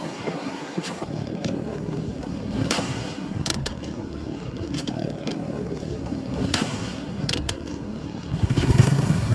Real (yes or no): no